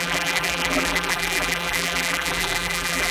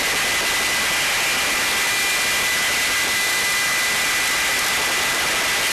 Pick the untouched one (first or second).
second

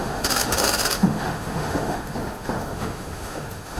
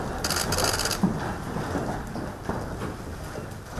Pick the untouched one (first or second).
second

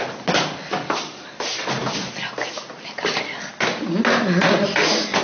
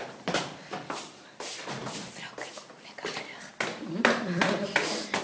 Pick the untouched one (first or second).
first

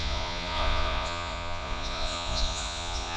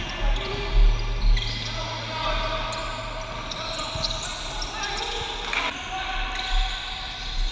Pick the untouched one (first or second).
second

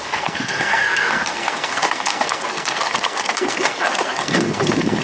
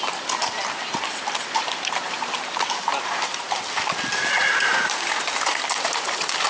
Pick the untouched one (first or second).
second